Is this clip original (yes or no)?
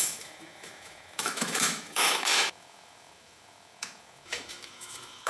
no